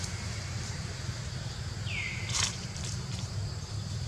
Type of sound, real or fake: fake